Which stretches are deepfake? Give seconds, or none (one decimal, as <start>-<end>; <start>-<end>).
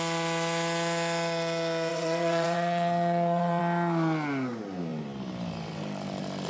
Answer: 1.9-3.6